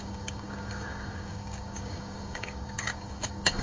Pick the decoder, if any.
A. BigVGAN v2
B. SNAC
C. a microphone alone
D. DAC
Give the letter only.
D